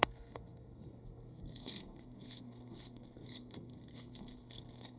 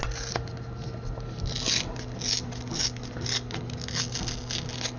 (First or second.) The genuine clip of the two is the second